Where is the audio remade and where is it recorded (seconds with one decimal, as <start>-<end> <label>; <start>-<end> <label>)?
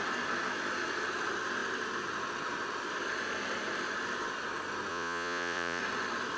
0.0-4.9 recorded; 4.9-5.8 remade; 5.8-6.4 recorded